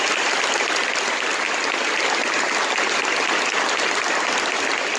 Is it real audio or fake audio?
real